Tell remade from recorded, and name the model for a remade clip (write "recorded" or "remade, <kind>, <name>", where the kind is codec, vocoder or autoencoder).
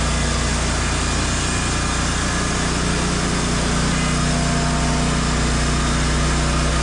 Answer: recorded